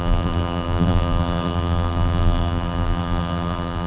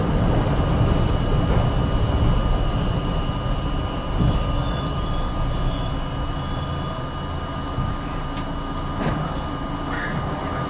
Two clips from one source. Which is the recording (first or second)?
second